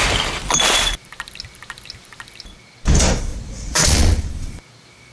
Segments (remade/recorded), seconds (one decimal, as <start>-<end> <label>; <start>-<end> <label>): 0.0-3.3 recorded; 3.3-4.3 remade; 4.3-5.1 recorded